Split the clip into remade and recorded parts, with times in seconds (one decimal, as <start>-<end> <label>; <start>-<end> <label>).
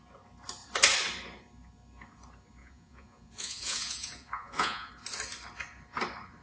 0.0-2.6 recorded; 2.6-4.9 remade; 4.9-6.4 recorded